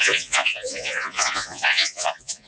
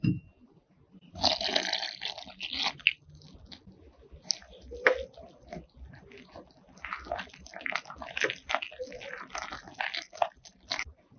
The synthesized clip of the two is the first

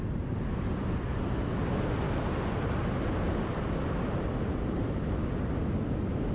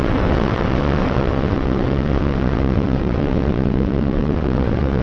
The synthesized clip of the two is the second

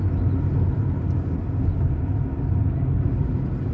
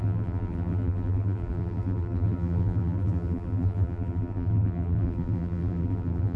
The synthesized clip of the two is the second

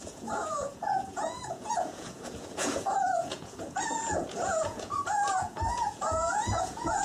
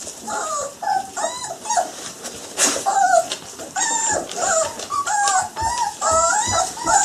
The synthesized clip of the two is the first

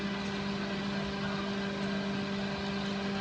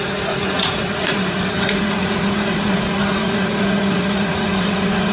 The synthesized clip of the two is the second